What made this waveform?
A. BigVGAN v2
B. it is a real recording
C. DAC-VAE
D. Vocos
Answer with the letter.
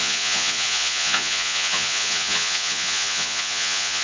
D